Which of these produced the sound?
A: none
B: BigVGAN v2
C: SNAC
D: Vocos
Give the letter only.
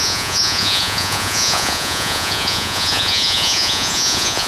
D